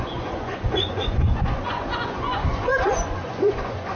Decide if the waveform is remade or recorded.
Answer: remade